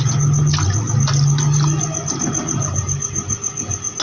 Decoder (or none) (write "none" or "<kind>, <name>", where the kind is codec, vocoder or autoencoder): none